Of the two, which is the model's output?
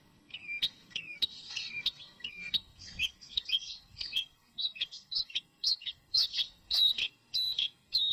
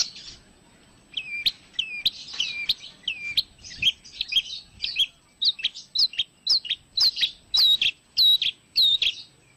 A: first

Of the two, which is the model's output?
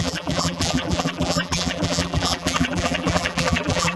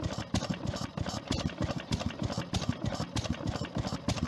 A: first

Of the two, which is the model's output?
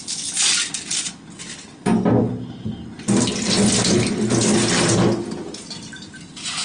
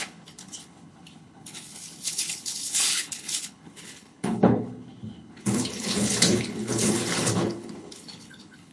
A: second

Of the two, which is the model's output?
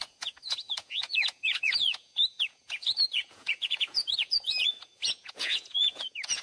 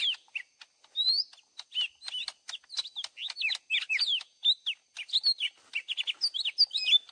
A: first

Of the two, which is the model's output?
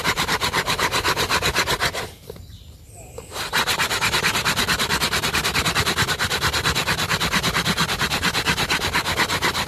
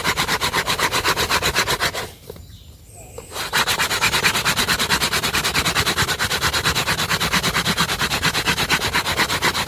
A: first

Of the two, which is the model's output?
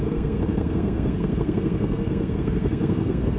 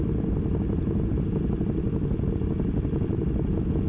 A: first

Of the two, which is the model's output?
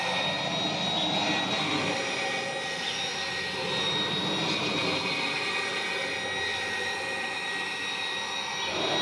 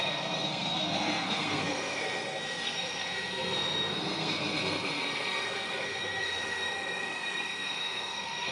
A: second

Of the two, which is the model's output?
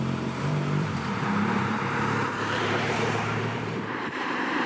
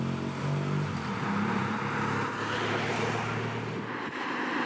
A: first